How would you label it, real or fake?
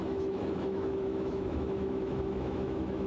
fake